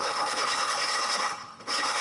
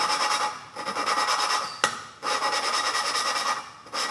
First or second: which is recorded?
second